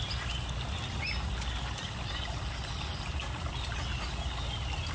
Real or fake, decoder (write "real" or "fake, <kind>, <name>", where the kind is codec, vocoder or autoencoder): real